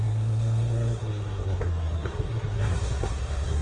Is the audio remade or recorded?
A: remade